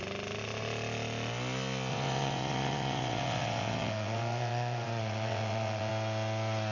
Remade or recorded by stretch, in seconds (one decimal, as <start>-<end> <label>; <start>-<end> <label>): 0.0-1.9 recorded; 1.9-5.9 remade; 5.9-6.7 recorded